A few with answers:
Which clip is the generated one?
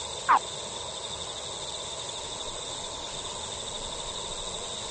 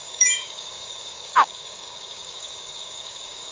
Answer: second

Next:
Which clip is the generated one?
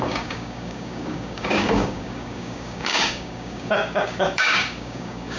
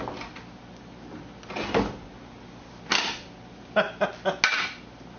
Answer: first